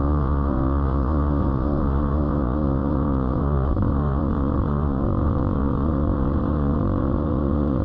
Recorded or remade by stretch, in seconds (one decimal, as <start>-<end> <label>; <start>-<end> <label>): 0.0-7.8 remade